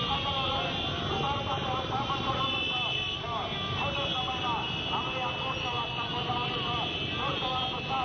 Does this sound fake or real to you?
real